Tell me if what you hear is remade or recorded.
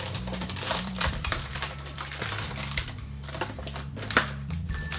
remade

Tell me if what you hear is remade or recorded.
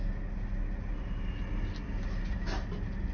recorded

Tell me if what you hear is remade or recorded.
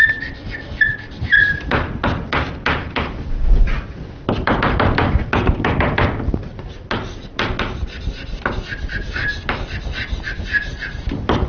recorded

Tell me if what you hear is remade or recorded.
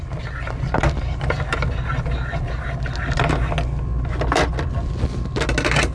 recorded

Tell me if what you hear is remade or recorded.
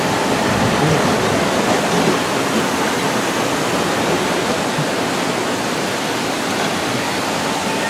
recorded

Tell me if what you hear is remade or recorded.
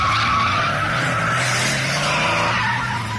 recorded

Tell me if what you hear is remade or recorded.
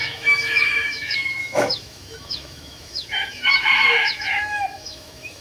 remade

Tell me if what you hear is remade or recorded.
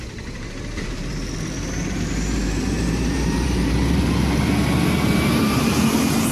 remade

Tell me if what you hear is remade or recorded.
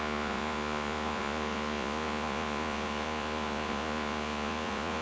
remade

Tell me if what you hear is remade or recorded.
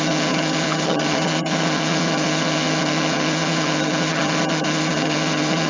remade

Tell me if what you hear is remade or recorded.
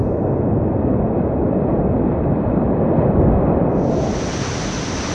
recorded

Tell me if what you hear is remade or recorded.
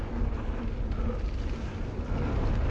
recorded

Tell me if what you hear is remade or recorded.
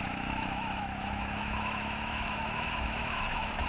remade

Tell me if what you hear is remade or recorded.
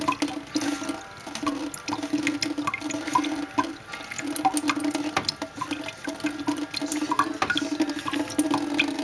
recorded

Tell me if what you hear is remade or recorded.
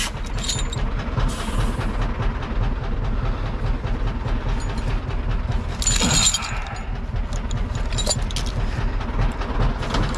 recorded